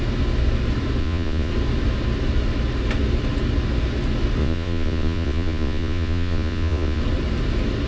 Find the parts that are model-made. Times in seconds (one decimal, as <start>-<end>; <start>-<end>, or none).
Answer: 1.0-1.5; 4.4-7.0